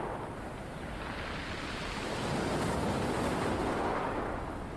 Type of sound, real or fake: real